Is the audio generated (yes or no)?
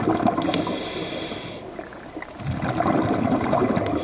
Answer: no